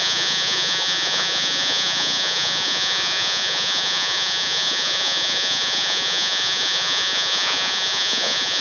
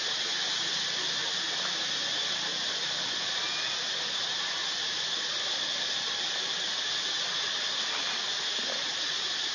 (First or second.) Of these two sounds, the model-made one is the first